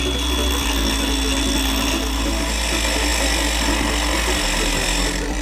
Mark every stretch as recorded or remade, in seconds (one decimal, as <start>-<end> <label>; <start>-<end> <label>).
0.0-5.4 recorded